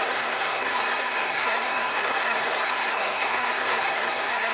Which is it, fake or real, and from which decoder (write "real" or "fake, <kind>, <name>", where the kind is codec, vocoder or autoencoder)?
fake, codec, SNAC